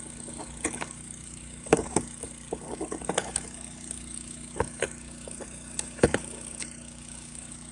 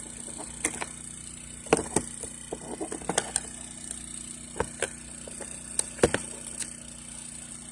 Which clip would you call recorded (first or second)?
second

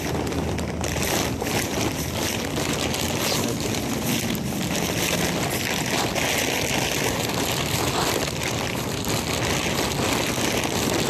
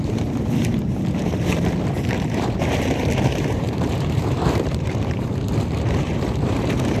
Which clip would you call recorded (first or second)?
first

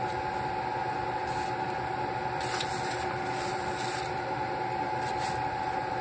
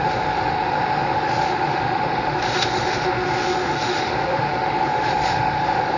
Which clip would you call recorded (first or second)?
first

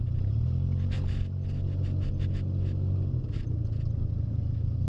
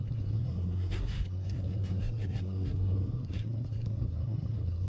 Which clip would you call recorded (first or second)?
first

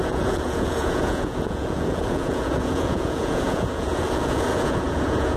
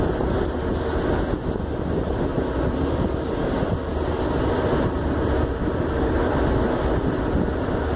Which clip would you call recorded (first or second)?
second